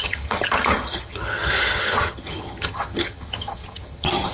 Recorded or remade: remade